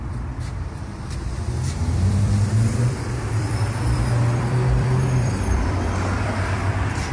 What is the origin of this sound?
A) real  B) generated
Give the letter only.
B